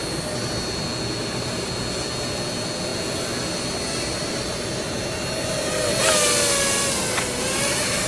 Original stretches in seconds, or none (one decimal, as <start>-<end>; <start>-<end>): 0.0-1.2; 1.7-8.1